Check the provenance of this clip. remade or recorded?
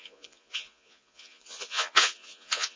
remade